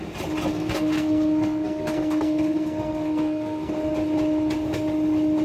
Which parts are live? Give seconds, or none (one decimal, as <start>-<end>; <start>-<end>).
0.0-0.5; 3.7-5.4